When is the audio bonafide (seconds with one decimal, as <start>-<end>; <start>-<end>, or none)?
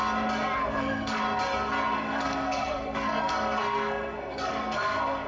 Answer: 0.0-0.6; 1.2-1.9